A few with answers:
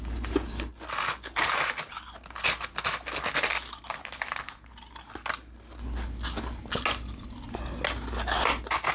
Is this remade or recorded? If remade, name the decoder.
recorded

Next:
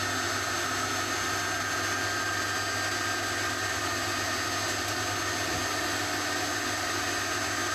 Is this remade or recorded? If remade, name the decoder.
recorded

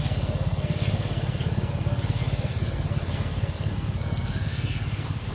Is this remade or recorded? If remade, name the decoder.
remade, codec, SNAC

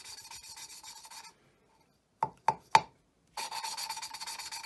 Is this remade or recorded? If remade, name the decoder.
recorded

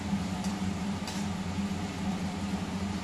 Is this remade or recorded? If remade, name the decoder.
recorded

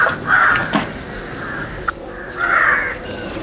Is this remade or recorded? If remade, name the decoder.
recorded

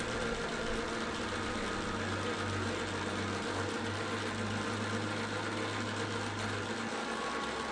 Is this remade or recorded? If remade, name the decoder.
recorded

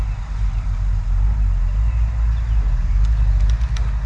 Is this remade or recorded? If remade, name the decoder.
recorded